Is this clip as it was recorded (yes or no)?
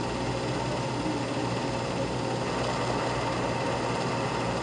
yes